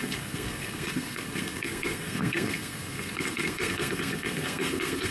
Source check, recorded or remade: remade